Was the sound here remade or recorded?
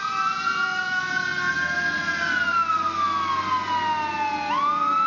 recorded